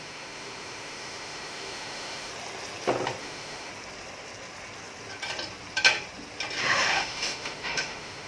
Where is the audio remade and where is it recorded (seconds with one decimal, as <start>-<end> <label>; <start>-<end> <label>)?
0.0-2.3 remade; 2.3-3.2 recorded; 3.2-3.7 remade; 3.7-6.6 recorded; 6.6-8.3 remade